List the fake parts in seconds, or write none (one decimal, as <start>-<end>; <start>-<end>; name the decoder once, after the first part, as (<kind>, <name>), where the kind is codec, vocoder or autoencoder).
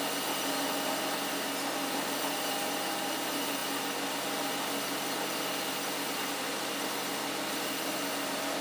none